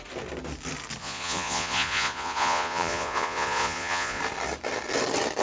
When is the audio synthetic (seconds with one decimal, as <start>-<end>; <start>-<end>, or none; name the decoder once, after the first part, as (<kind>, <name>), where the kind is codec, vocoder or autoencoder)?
1.0-4.2 (vocoder, Vocos)